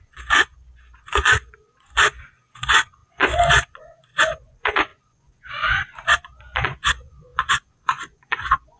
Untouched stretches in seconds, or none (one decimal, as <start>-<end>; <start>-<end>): none